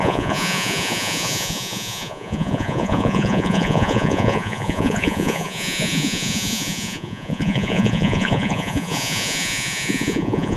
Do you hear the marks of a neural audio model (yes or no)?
yes